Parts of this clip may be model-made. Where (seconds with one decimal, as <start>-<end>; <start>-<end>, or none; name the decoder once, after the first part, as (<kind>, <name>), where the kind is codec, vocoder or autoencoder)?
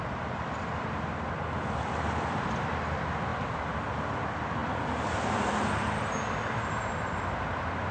none